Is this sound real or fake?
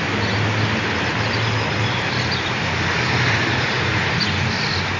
real